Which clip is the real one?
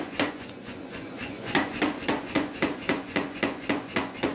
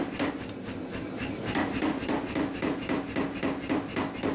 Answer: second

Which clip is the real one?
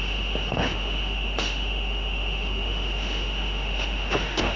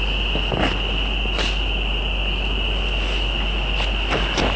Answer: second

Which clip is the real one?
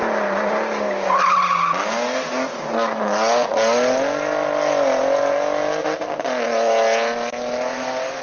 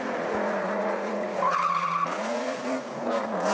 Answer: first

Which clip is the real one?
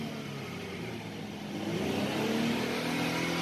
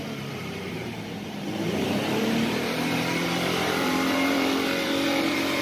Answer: first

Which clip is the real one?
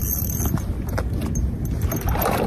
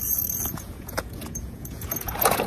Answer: first